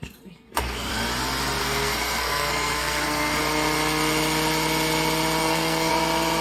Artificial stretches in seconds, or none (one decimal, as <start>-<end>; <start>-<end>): 0.0-0.9; 1.6-3.4; 5.4-5.9